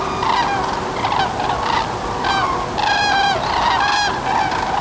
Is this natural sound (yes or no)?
yes